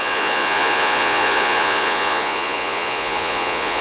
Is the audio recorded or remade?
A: remade